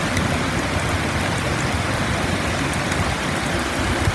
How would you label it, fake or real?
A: real